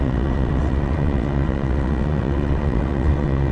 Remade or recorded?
remade